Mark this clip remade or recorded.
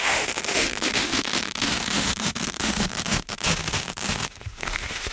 remade